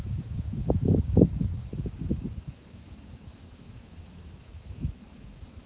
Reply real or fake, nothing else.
fake